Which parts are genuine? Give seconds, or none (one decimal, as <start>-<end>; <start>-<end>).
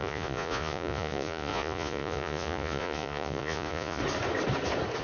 4.0-5.0